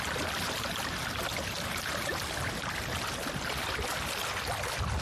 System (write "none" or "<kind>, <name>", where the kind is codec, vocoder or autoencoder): none